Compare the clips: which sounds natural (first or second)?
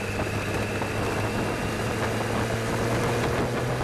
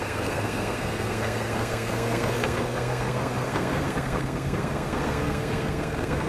first